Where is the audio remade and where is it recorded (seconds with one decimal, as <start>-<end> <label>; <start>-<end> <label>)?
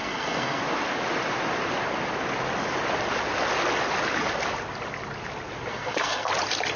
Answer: 0.0-0.6 remade; 0.6-5.7 recorded; 5.7-6.3 remade; 6.3-6.8 recorded